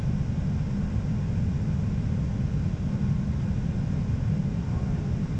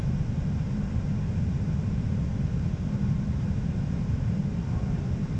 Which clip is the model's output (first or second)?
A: second